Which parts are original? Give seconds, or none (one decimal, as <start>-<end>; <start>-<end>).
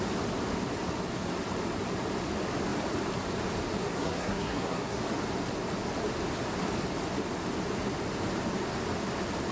0.0-3.8; 5.0-9.5